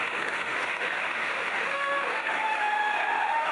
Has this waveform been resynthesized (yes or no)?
yes